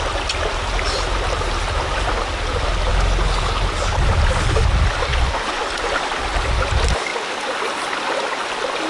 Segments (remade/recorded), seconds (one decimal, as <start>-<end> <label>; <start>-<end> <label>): 0.0-5.1 recorded; 5.1-5.6 remade; 5.6-8.9 recorded

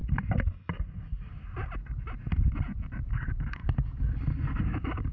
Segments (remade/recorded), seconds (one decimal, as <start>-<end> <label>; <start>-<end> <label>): 0.0-3.1 recorded; 3.1-3.6 remade; 3.6-4.6 recorded; 4.6-5.1 remade

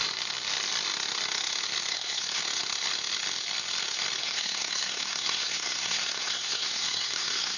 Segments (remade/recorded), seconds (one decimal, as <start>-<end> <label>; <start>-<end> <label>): 0.0-1.9 recorded; 1.9-2.4 remade; 2.4-4.2 recorded; 4.2-7.6 remade

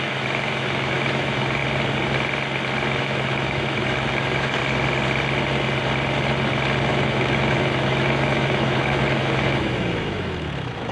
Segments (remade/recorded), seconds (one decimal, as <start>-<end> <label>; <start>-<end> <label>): 0.0-1.6 remade; 1.6-3.0 recorded; 3.0-4.6 remade; 4.6-6.9 recorded; 6.9-10.9 remade

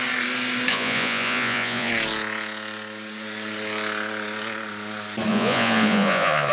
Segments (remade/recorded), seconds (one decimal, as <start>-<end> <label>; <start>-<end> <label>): 0.0-0.7 recorded; 0.7-1.9 remade; 1.9-5.3 recorded; 5.3-6.5 remade

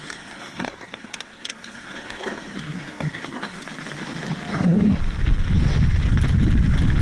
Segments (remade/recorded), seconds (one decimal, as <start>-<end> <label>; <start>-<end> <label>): 0.0-3.6 remade; 3.6-4.5 recorded; 4.5-5.0 remade; 5.0-7.0 recorded

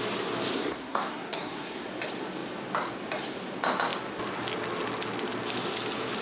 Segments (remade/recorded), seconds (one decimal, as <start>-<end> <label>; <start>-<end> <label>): 0.0-0.5 recorded; 0.5-1.9 remade; 1.9-6.2 recorded